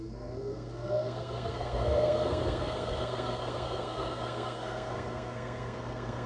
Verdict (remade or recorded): remade